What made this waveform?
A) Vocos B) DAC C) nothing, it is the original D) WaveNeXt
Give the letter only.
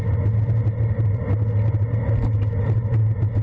C